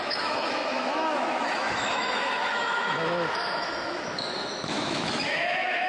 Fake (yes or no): yes